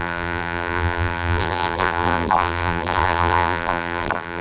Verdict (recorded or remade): remade